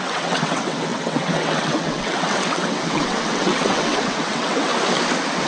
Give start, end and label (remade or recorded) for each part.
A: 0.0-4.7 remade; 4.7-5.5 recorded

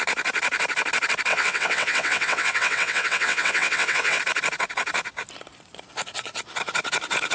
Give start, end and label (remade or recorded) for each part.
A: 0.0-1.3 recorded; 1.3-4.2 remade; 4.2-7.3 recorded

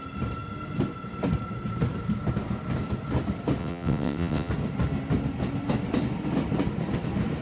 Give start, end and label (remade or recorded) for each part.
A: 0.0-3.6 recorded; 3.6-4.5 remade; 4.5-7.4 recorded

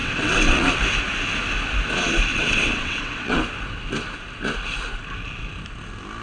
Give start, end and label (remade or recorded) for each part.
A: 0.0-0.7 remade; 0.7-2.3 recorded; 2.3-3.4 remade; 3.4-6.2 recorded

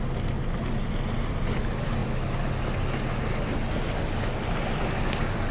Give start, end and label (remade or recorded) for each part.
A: 0.0-5.5 recorded

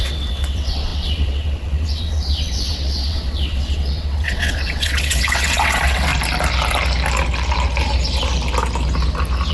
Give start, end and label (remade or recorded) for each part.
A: 0.0-6.1 remade; 6.1-9.5 recorded

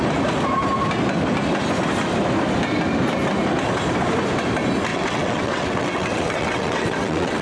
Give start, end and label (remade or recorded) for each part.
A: 0.0-4.9 recorded; 4.9-7.4 remade

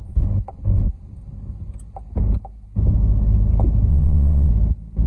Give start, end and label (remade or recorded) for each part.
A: 0.0-3.9 recorded; 3.9-4.5 remade; 4.5-5.1 recorded